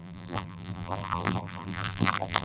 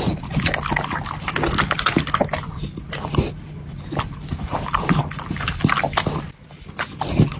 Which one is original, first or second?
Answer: second